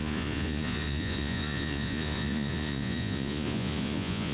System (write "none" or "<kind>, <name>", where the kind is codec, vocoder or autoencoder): vocoder, Vocos